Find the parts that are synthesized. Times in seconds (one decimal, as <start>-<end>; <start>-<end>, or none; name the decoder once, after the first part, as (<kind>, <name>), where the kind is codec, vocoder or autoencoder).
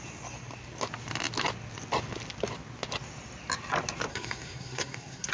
4.1-5.3 (codec, SNAC)